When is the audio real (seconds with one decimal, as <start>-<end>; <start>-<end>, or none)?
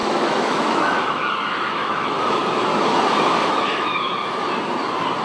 2.4-3.5; 4.1-5.2